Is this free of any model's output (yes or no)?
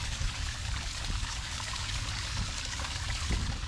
no